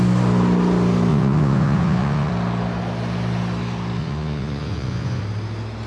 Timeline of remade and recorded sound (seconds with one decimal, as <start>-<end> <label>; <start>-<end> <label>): 0.0-1.1 recorded; 1.1-2.3 remade; 2.3-4.0 recorded; 4.0-5.2 remade; 5.2-5.9 recorded